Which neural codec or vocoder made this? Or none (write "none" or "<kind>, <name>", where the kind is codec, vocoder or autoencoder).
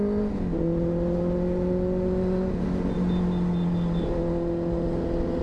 none